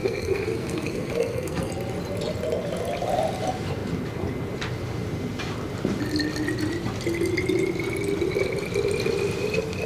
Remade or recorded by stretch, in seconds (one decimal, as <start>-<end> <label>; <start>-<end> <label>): 0.0-1.7 remade; 1.7-9.9 recorded